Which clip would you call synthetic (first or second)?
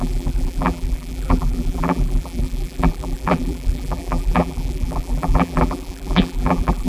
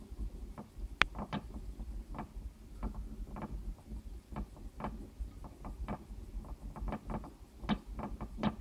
first